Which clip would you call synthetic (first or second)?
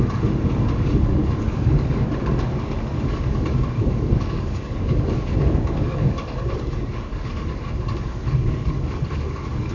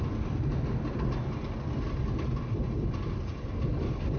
first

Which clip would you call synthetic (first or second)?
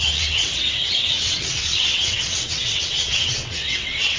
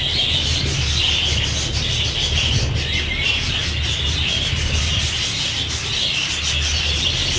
first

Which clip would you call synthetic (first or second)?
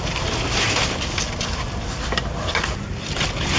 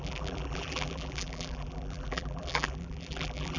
second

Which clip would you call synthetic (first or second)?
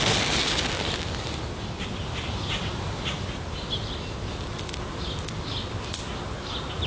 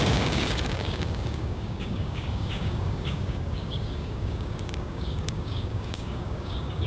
second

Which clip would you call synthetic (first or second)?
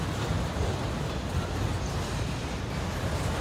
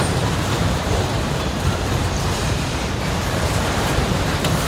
second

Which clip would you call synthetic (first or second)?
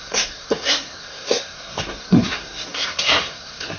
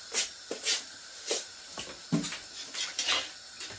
first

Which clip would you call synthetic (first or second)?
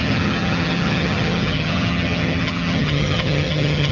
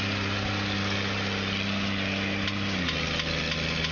first